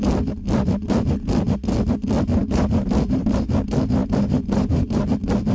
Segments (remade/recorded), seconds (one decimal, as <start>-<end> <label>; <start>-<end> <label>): 0.0-2.4 recorded; 2.4-3.4 remade; 3.4-4.0 recorded; 4.0-5.0 remade; 5.0-5.5 recorded